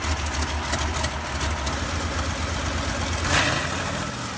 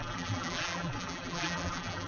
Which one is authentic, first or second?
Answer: first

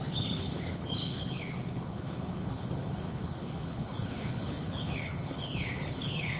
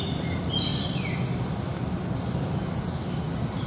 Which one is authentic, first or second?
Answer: second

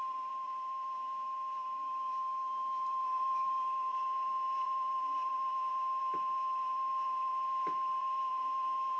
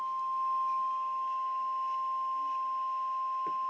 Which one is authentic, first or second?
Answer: second